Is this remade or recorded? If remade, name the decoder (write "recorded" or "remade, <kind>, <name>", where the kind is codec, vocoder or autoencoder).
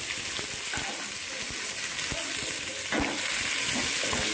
recorded